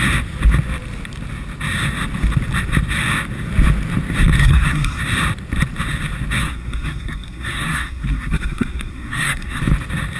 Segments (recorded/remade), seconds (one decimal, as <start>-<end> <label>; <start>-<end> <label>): 0.0-4.4 recorded; 4.4-5.0 remade; 5.0-6.4 recorded; 6.4-9.6 remade; 9.6-10.2 recorded